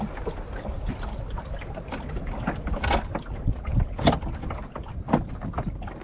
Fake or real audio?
real